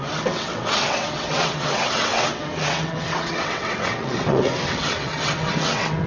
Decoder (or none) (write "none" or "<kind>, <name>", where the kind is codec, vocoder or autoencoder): vocoder, WaveNeXt